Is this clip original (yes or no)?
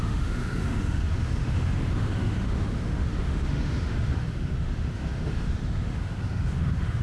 no